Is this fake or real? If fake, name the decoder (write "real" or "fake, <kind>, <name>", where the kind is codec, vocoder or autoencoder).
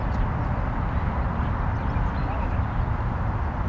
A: real